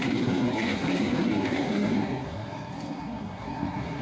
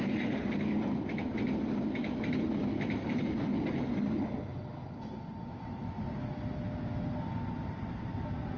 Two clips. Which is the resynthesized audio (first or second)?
first